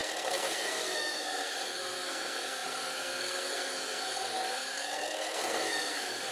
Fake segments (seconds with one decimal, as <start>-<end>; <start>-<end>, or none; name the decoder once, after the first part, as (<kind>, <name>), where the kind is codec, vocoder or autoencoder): 0.0-6.3 (codec, SNAC)